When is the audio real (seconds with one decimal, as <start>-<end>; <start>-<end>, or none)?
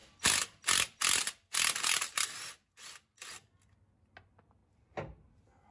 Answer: 0.0-5.7